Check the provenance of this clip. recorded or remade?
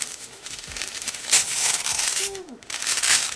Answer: remade